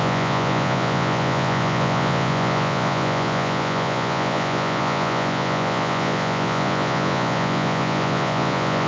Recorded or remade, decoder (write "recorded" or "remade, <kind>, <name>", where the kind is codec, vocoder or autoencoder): remade, vocoder, Vocos